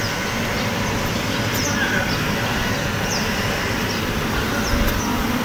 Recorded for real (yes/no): yes